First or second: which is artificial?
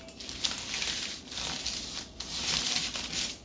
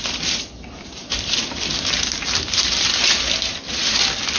second